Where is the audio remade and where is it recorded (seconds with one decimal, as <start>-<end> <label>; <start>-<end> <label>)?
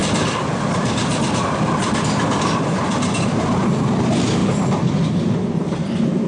0.0-3.4 remade; 3.4-4.4 recorded; 4.4-5.8 remade; 5.8-6.3 recorded